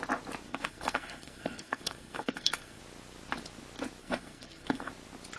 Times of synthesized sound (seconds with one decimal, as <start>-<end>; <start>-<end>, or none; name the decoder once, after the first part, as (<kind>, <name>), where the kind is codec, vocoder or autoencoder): 0.5-2.8 (codec, SNAC); 4.0-4.9